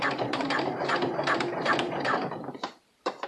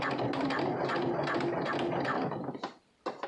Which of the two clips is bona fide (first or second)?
second